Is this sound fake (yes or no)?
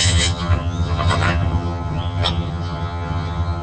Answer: yes